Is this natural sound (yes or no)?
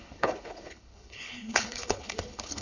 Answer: no